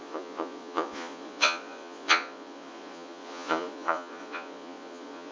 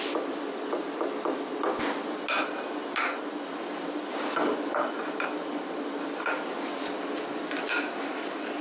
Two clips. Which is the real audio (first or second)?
second